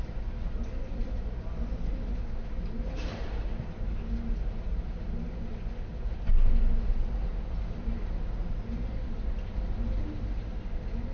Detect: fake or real real